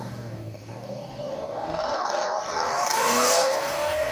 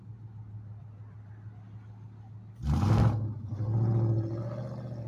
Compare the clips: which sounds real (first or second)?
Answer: second